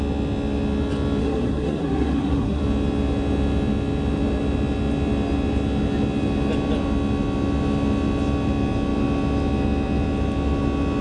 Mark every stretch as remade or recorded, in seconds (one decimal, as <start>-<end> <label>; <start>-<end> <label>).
0.0-1.2 recorded; 1.2-2.6 remade; 2.6-11.0 recorded